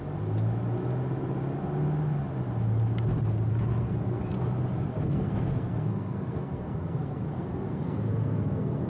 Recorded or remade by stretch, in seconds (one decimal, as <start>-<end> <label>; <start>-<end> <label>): 0.0-3.5 recorded; 3.5-4.2 remade; 4.2-4.9 recorded; 4.9-8.9 remade